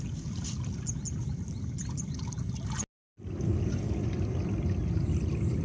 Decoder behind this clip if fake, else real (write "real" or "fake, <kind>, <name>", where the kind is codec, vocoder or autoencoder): real